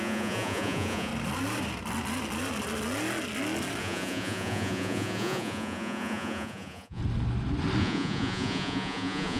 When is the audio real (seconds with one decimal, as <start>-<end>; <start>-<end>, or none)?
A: 1.1-3.8; 7.0-7.8